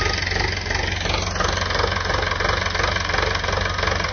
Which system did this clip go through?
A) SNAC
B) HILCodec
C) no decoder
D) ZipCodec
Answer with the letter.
C